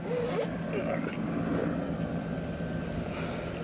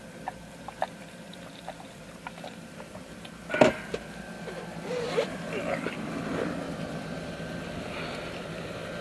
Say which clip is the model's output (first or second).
second